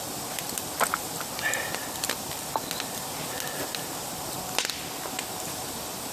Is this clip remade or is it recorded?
recorded